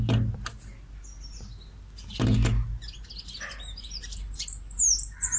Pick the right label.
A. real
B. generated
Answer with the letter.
A